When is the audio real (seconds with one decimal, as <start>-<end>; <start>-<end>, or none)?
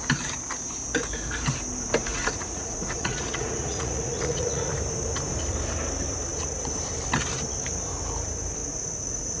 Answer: 0.0-2.0; 4.7-8.6